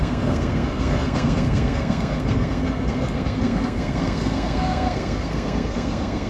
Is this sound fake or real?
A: fake